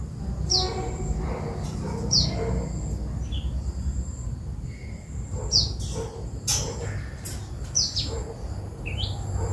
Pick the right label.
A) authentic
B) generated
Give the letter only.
A